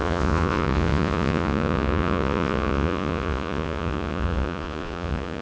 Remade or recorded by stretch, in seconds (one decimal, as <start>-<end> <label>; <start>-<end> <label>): 0.0-5.4 remade